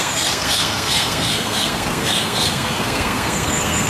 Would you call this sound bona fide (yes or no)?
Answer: no